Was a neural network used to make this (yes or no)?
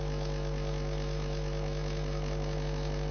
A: yes